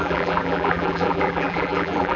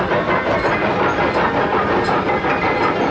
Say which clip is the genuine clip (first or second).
second